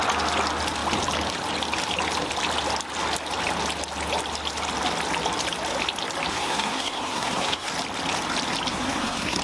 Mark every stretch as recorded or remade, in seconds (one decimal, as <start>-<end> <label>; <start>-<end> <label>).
0.0-6.3 recorded; 6.3-7.7 remade; 7.7-8.7 recorded; 8.7-9.4 remade